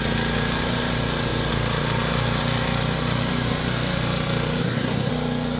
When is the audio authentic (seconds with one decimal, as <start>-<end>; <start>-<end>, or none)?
0.0-4.6; 5.1-5.6